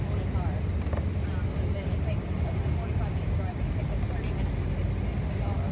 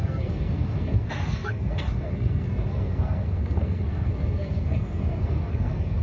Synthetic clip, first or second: second